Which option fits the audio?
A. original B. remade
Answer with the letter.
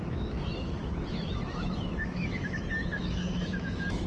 B